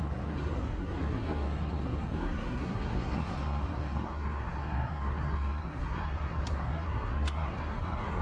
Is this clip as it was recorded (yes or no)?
no